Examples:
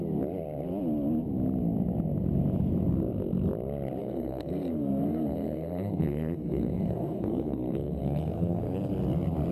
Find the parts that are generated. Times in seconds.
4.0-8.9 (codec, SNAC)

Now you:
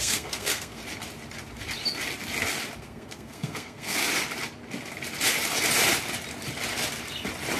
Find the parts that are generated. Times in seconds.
0.0-0.8 (codec, SNAC); 2.8-4.0

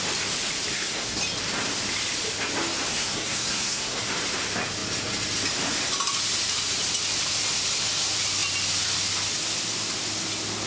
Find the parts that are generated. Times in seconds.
0.7-1.2 (codec, SNAC); 2.9-4.1

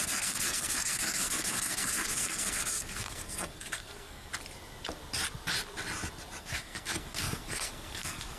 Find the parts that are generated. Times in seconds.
0.0-4.3 (codec, SNAC); 6.4-8.4

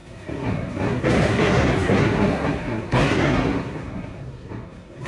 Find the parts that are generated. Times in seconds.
0.0-5.1 (codec, SNAC)

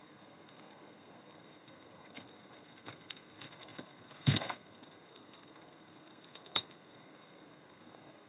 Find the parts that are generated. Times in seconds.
0.0-8.3 (codec, SNAC)

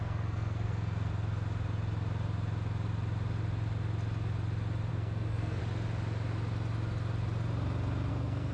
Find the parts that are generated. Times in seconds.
0.0-1.1 (codec, SNAC); 4.9-5.6; 8.1-8.5

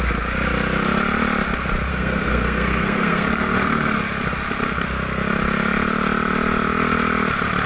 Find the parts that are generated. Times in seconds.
1.9-4.0 (codec, SNAC)